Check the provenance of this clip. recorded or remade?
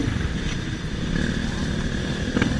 recorded